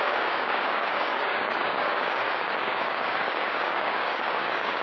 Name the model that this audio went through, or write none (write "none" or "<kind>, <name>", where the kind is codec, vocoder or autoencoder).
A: codec, DAC